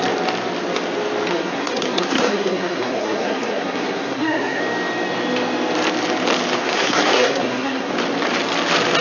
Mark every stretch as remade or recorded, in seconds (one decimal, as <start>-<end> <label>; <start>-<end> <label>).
0.0-1.3 recorded; 1.3-4.6 remade; 4.6-6.6 recorded; 6.6-7.9 remade; 7.9-9.0 recorded